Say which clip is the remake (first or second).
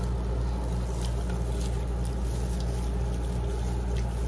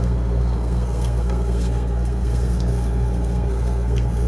second